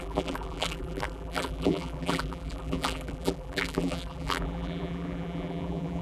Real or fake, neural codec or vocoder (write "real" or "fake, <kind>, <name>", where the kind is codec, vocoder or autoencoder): fake, vocoder, BigVGAN v2